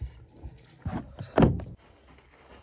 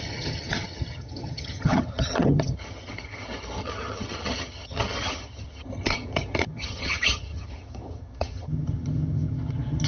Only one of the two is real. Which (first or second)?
first